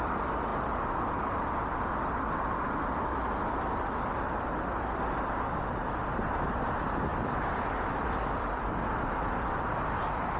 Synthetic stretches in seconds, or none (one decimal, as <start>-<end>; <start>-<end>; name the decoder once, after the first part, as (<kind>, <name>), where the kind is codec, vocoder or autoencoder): 0.5-5.3 (vocoder, BigVGAN v2); 7.1-9.1